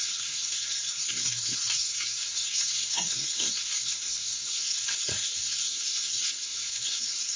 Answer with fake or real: fake